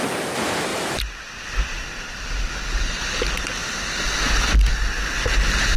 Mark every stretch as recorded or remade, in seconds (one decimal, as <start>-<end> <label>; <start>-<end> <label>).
0.0-0.7 recorded; 0.7-2.5 remade; 2.5-5.8 recorded